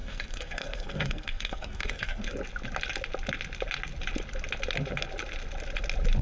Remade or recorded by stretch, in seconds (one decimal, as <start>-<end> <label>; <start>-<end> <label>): 0.0-2.4 remade; 2.4-6.2 recorded